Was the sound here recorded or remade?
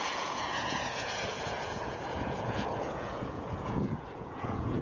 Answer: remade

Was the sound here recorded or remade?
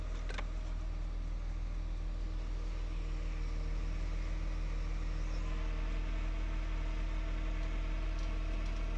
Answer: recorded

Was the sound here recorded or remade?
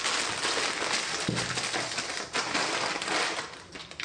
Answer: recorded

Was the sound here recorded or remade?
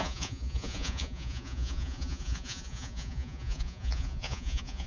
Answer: remade